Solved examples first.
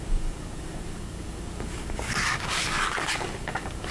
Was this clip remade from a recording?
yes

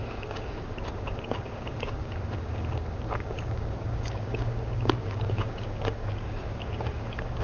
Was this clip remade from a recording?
yes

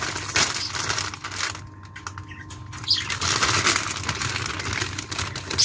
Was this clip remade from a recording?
no